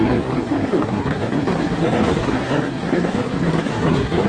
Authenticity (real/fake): fake